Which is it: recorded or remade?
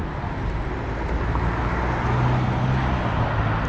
recorded